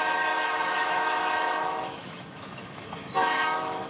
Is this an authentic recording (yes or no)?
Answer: no